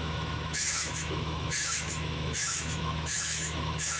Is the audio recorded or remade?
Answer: remade